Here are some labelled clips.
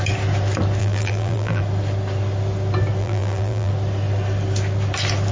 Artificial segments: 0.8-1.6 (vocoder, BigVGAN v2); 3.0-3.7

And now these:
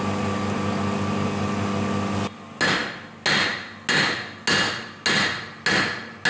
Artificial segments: none

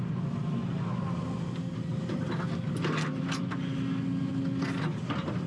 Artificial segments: none

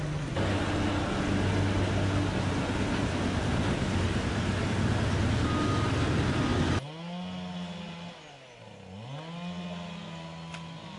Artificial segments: none